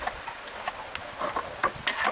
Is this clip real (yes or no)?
yes